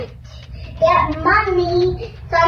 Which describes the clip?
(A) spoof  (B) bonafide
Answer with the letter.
A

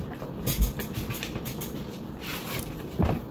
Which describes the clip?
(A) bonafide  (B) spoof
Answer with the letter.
B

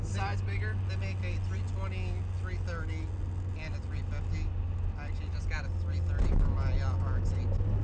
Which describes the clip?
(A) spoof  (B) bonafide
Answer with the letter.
B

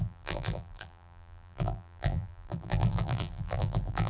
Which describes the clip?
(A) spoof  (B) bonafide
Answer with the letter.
A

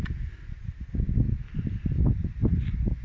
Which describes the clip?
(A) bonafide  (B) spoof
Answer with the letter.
A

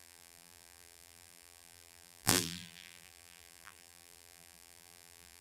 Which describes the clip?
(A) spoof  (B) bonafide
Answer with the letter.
A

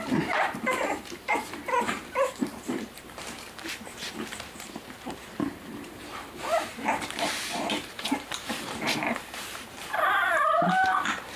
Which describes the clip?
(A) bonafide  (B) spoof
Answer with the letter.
B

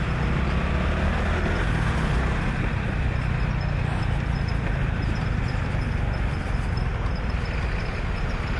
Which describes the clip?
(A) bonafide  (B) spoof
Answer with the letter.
A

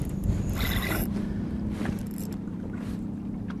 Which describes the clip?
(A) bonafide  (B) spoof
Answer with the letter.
A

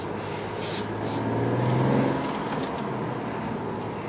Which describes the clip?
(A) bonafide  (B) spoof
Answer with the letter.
A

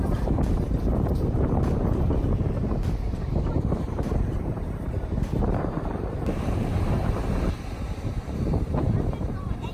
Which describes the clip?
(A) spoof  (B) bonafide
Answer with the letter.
A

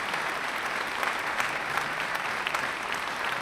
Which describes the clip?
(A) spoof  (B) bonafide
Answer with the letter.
A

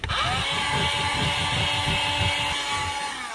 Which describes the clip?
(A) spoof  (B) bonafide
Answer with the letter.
B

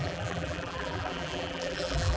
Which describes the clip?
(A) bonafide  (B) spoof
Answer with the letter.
B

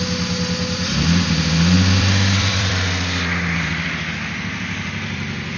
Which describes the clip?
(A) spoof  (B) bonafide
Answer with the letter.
A